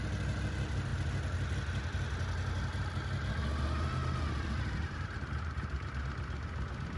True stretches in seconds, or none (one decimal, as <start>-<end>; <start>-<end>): 0.0-4.8; 6.0-7.0

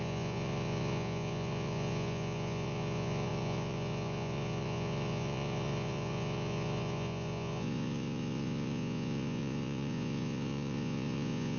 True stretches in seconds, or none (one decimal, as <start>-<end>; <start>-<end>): none

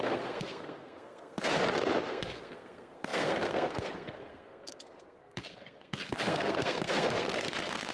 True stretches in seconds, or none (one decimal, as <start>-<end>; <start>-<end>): 1.5-2.1

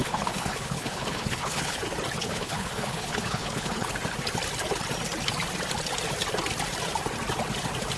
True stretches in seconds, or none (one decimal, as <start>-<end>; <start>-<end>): 1.8-2.2; 3.9-8.0

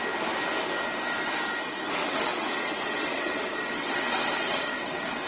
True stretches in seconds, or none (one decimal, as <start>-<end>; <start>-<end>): 0.0-2.0

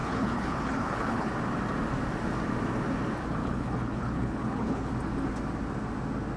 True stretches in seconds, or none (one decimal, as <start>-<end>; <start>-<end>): 1.3-3.4; 4.9-6.4

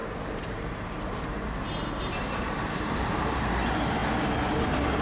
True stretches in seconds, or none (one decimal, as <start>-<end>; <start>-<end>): 1.3-2.0; 4.0-4.5

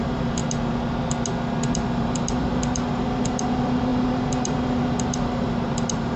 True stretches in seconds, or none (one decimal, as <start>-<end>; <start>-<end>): 0.4-1.7